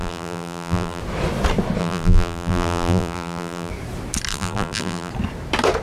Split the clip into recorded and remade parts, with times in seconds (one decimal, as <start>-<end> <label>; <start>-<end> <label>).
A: 0.0-1.0 remade; 1.0-1.8 recorded; 1.8-3.7 remade; 3.7-4.3 recorded; 4.3-5.1 remade; 5.1-5.8 recorded